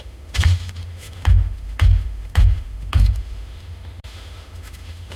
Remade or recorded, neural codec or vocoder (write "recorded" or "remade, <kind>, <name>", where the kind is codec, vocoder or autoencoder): remade, autoencoder, DAC-VAE